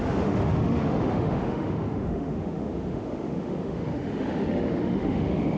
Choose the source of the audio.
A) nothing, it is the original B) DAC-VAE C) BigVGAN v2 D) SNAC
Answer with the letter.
B